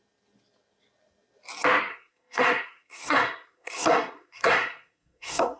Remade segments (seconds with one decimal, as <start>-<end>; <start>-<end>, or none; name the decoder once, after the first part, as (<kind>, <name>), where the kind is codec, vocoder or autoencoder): 1.9-5.6 (codec, SNAC)